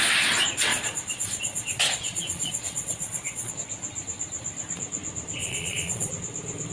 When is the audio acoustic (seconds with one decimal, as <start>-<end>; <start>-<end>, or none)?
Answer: 0.0-0.7; 3.5-5.4; 6.1-6.7